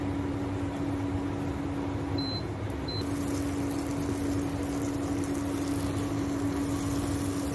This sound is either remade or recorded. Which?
recorded